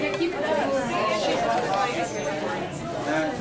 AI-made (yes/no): no